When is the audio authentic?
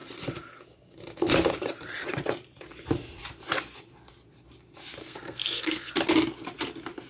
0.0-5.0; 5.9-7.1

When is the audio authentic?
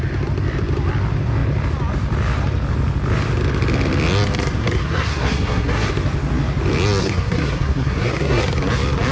0.0-4.6; 5.9-7.0; 8.4-9.1